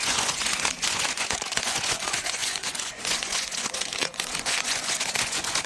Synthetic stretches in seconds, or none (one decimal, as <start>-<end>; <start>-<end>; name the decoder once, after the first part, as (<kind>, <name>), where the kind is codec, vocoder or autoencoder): 0.0-5.7 (vocoder, Vocos)